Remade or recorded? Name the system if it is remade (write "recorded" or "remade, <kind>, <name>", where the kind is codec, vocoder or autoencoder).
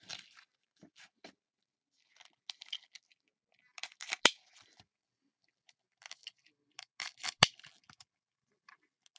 recorded